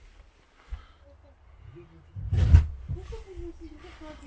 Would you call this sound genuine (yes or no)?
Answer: yes